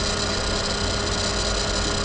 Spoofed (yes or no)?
no